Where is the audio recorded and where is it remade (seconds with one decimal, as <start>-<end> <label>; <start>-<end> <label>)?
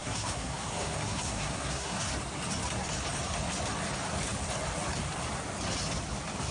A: 0.0-2.1 remade; 2.1-6.5 recorded